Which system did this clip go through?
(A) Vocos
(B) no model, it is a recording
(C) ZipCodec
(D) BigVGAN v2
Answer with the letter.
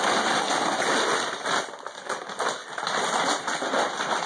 B